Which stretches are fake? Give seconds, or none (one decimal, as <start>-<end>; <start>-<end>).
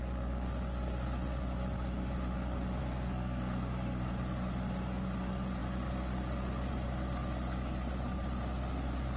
2.8-4.1